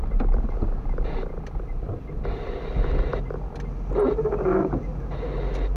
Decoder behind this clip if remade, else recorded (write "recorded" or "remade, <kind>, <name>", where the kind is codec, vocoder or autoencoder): recorded